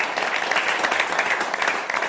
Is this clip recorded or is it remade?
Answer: recorded